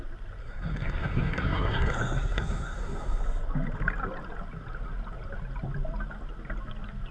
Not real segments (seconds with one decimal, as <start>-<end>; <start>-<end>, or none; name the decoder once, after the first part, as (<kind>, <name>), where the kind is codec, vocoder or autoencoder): 0.4-3.2 (codec, SNAC)